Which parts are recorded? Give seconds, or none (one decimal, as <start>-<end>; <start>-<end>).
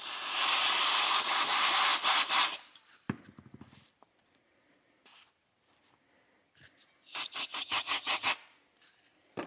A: 0.0-7.6; 8.3-9.5